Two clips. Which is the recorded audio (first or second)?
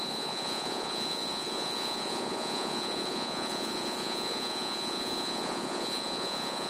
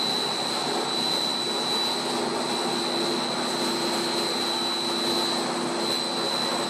second